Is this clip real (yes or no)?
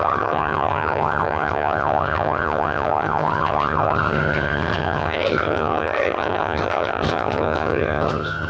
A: no